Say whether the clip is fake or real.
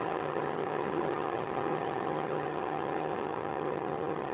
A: fake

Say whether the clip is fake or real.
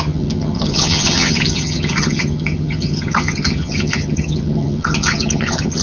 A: fake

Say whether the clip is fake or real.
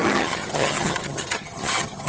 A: fake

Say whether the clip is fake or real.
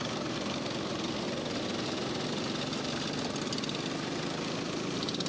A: real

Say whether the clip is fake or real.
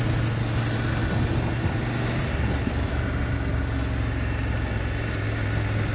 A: real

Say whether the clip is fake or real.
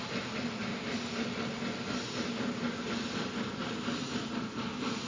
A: real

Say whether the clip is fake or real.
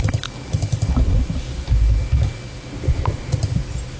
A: real